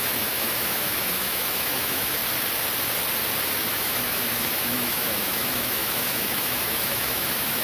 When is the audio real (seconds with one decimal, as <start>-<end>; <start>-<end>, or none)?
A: 2.2-3.7